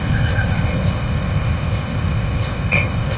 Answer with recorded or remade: remade